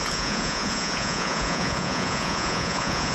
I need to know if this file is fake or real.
fake